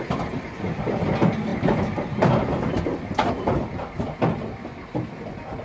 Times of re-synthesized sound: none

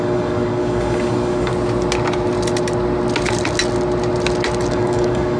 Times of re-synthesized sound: 0.0-1.5 (codec, DAC); 4.7-5.4

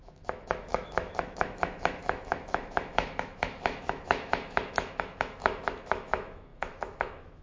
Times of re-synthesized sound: 0.0-7.4 (autoencoder, DAC-VAE)

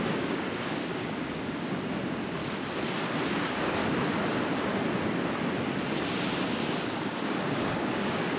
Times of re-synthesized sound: 0.0-2.4 (codec, DAC); 3.3-3.8; 6.9-8.4